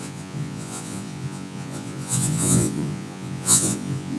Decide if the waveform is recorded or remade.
remade